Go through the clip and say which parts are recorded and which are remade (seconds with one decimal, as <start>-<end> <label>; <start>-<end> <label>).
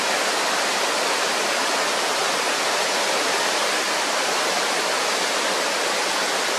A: 0.0-6.6 recorded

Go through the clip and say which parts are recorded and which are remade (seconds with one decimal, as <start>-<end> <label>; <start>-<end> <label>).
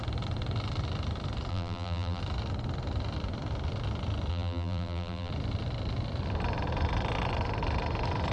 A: 0.0-1.5 recorded; 1.5-2.2 remade; 2.2-4.3 recorded; 4.3-5.3 remade; 5.3-8.3 recorded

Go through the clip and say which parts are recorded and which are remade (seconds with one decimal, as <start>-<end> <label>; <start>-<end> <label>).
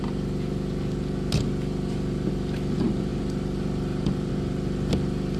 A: 0.0-5.4 recorded